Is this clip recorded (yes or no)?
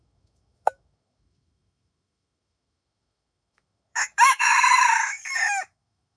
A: no